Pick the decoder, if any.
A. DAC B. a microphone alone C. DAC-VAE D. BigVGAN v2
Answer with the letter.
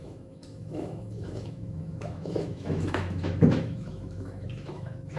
C